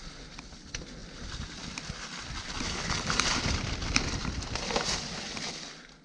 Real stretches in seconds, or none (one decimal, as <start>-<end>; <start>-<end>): 0.0-6.0